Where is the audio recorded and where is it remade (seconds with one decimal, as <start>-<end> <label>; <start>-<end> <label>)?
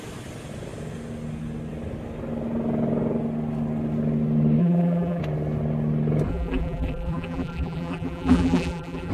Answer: 0.0-4.6 recorded; 4.6-5.2 remade; 5.2-6.3 recorded; 6.3-9.1 remade